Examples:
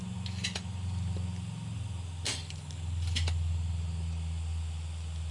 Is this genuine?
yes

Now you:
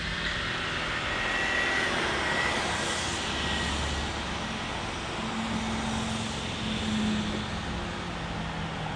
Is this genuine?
yes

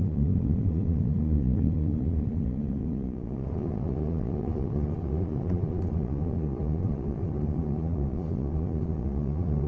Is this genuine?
no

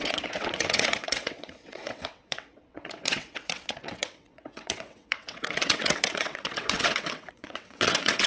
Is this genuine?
no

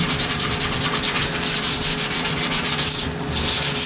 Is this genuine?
yes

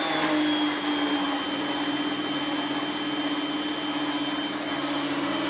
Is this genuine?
yes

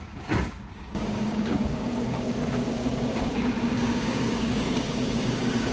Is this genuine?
no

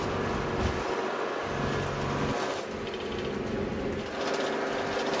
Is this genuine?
yes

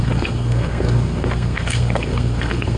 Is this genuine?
no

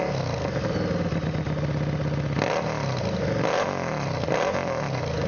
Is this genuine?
yes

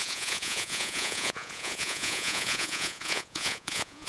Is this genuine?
no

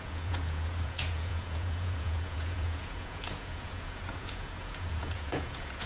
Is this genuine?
no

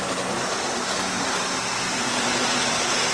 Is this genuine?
yes